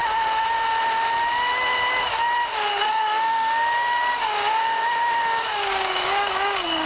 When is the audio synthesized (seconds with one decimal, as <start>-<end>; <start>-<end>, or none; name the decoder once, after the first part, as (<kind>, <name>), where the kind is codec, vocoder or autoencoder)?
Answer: 2.7-6.9 (codec, DAC)